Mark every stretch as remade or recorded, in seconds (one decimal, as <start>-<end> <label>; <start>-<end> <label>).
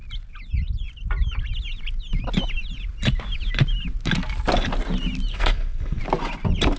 0.0-5.3 recorded; 5.3-6.0 remade; 6.0-6.8 recorded